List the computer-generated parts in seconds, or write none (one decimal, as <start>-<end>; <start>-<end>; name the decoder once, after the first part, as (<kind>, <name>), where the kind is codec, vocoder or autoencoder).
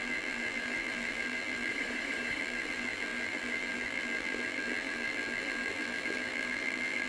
0.0-1.7 (vocoder, BigVGAN v2); 2.4-7.1